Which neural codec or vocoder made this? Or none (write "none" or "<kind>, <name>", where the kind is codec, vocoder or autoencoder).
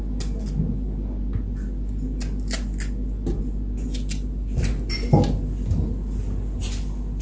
none